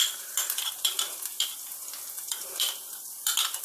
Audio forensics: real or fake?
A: fake